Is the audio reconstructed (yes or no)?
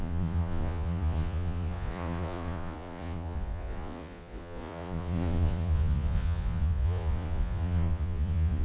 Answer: yes